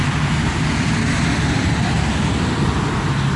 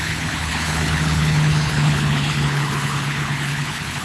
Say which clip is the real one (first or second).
first